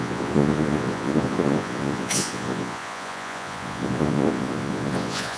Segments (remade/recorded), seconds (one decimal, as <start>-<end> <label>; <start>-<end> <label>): 0.0-5.4 remade